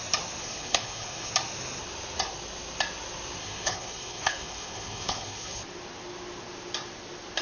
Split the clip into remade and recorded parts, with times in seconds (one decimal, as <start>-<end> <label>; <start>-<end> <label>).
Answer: 0.0-0.4 recorded; 0.4-1.3 remade; 1.3-3.4 recorded; 3.4-5.6 remade; 5.6-7.4 recorded